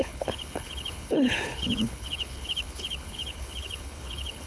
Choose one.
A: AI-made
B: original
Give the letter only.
A